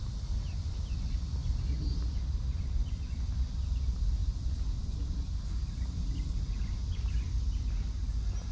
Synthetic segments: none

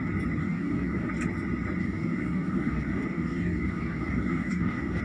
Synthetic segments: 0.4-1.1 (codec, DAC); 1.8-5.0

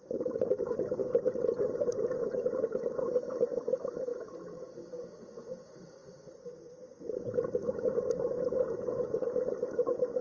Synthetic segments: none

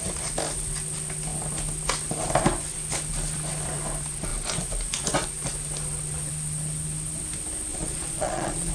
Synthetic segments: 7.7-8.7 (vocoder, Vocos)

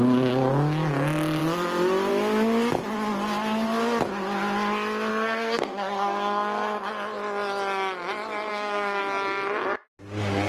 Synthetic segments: 5.1-6.9 (codec, SNAC); 8.5-9.0

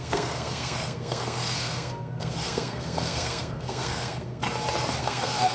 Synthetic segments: 0.0-4.4 (codec, SNAC); 5.0-5.5